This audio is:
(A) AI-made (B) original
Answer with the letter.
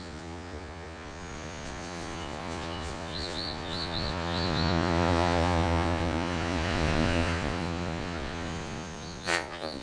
A